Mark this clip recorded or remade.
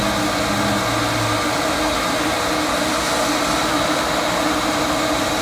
recorded